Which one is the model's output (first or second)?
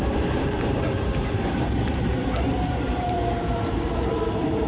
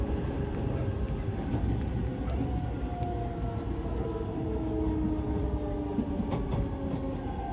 first